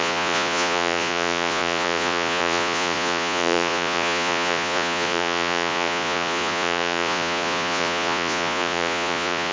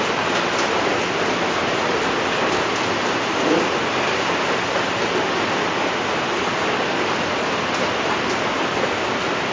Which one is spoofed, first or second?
first